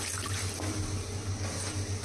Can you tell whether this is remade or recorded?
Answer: recorded